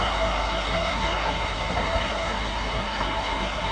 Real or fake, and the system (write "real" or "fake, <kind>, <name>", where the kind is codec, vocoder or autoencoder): fake, codec, SNAC